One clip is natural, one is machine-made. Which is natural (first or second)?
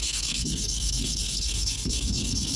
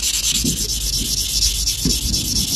second